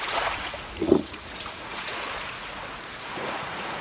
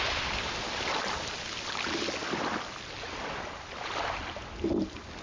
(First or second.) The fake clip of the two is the first